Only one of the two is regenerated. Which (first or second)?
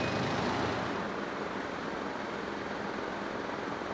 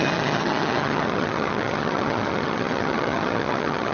second